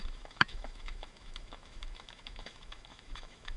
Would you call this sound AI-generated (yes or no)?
yes